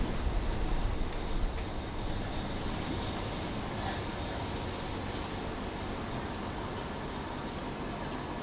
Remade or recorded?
recorded